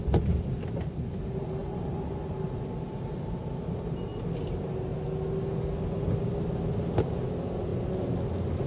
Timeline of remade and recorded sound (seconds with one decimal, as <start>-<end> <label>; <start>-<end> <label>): 0.0-8.7 recorded